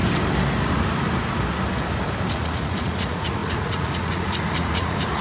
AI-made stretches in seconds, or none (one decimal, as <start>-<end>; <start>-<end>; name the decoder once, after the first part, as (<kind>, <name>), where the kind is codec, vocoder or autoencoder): 2.3-5.2 (vocoder, Vocos)